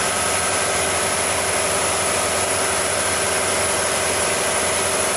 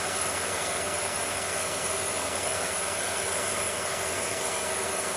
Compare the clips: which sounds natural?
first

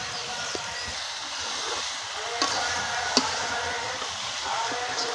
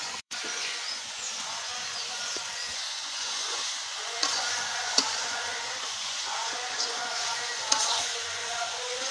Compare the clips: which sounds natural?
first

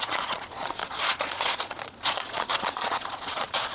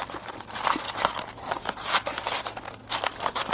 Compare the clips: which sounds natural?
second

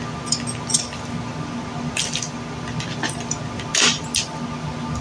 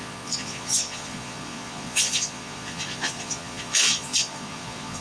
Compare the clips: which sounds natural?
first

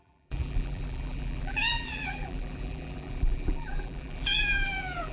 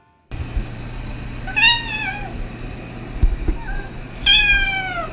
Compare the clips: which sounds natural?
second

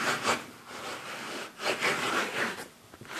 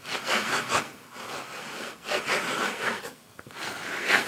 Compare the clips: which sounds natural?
first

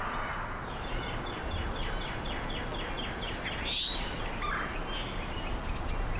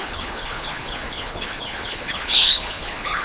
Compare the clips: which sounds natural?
first